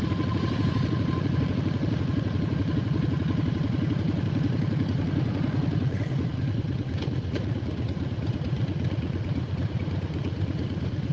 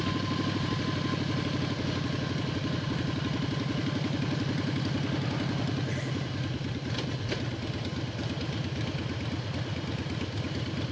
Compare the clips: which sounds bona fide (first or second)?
second